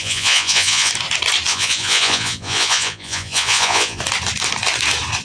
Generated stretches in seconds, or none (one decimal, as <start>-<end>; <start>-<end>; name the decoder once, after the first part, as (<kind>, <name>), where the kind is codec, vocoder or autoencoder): 0.0-0.9 (vocoder, Vocos); 1.5-4.0

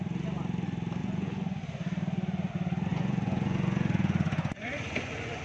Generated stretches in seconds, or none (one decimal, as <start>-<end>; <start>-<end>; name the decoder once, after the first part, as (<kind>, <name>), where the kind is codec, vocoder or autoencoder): 1.0-1.6 (vocoder, Vocos); 2.9-5.4

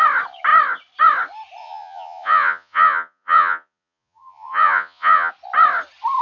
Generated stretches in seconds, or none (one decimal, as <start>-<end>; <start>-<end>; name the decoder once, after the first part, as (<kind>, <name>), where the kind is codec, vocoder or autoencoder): 1.6-5.3 (vocoder, Vocos)

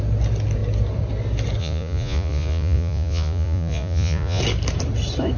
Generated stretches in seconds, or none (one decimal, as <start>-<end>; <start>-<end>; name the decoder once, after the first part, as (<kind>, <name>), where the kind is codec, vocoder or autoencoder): 1.6-4.4 (vocoder, Vocos)

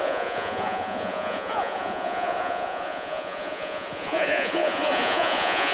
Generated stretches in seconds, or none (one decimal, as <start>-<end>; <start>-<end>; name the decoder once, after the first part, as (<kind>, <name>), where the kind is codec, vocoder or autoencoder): 0.0-5.7 (vocoder, Vocos)

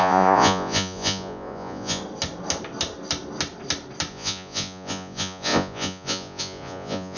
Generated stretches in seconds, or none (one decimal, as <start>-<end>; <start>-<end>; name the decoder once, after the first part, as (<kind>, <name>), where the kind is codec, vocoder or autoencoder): 0.0-2.0 (vocoder, Vocos); 4.1-7.2